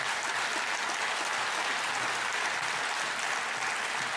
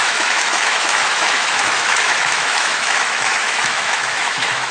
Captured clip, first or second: first